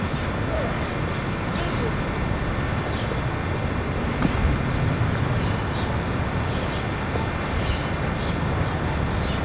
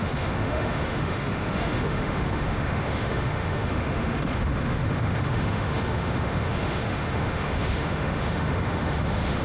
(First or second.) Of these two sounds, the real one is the first